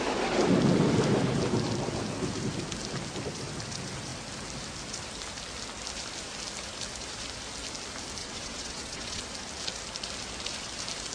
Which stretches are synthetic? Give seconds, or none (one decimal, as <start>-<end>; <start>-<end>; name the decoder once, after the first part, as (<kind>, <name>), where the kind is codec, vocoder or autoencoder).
8.2-9.2 (vocoder, WaveNeXt)